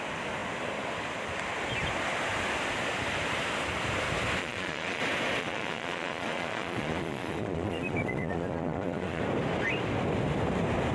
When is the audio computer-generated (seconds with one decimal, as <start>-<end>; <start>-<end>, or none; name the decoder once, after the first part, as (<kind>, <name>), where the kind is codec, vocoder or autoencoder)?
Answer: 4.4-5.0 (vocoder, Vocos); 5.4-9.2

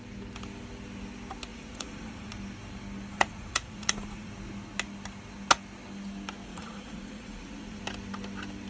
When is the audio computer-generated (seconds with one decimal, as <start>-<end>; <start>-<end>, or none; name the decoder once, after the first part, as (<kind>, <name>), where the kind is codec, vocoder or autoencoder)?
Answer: 1.5-2.3 (vocoder, Vocos); 3.1-4.3; 6.5-7.8

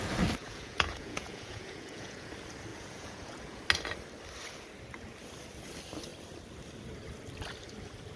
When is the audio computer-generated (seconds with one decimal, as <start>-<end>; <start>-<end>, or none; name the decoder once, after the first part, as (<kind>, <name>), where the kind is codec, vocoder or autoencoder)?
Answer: 0.4-2.3 (vocoder, Vocos); 2.7-3.6

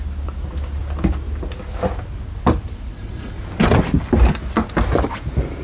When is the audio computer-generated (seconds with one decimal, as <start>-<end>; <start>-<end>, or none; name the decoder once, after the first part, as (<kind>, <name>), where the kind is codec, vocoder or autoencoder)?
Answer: 2.9-3.4 (vocoder, Vocos)